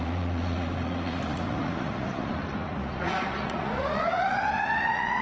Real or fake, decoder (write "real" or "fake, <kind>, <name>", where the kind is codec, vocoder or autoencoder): fake, vocoder, Vocos